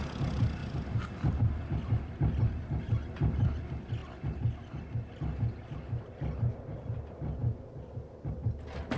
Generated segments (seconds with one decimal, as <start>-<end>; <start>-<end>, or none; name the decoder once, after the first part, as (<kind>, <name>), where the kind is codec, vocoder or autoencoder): 0.0-0.6 (vocoder, BigVGAN v2); 1.3-7.4; 8.0-9.0